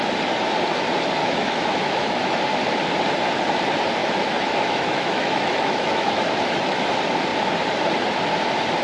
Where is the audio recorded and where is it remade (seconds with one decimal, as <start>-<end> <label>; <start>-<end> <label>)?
0.0-1.2 recorded; 1.2-2.4 remade; 2.4-4.0 recorded; 4.0-6.8 remade; 6.8-8.8 recorded